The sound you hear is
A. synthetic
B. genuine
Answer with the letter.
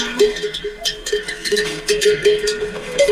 A